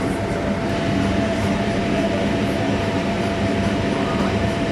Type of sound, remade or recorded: remade